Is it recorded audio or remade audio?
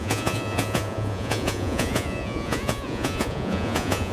remade